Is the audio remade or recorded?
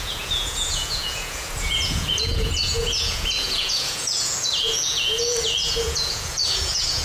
remade